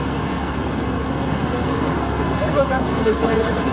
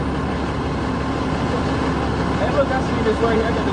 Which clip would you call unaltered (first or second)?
second